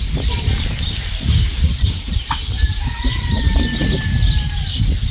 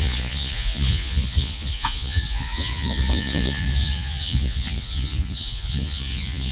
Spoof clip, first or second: second